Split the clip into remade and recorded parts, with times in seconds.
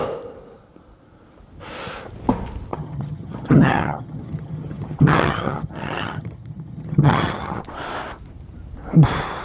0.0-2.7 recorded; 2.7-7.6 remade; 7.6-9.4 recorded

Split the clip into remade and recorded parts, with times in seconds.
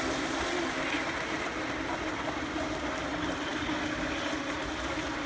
0.0-5.3 recorded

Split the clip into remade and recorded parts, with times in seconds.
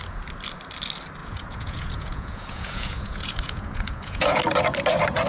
0.0-1.2 recorded; 1.2-4.4 remade; 4.4-5.3 recorded